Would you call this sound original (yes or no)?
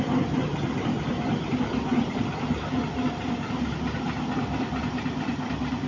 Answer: yes